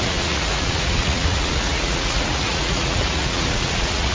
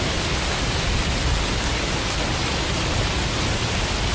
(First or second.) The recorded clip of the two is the second